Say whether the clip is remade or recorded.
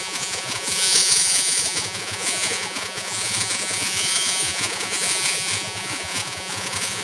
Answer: remade